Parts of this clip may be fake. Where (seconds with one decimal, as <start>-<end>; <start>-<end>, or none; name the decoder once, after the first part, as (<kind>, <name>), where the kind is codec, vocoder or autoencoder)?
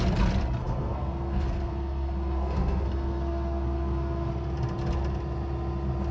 0.6-4.3 (codec, SNAC)